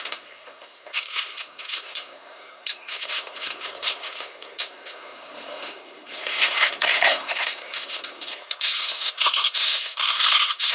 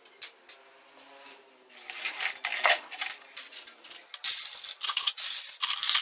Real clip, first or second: second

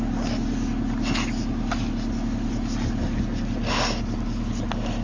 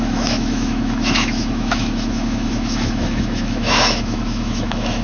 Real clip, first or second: first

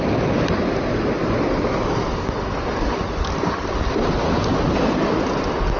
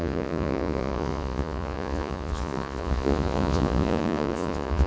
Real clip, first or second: first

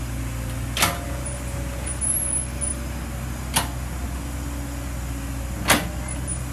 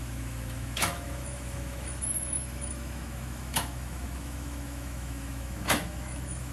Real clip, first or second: first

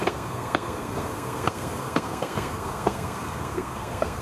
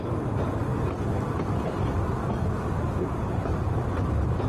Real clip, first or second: second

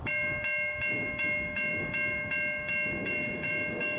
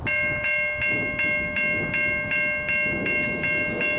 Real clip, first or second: second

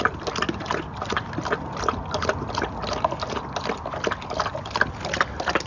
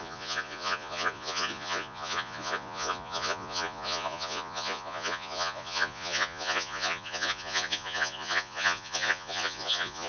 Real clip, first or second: first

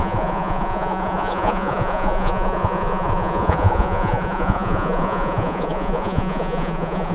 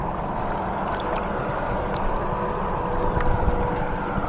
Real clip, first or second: second